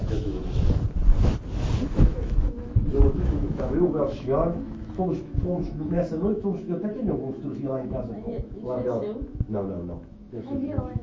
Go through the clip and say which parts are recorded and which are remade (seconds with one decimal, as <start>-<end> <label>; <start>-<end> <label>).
0.0-0.4 remade; 0.4-2.0 recorded; 2.0-2.6 remade; 2.6-3.1 recorded; 3.1-11.0 remade